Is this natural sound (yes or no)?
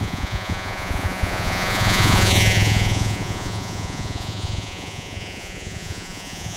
no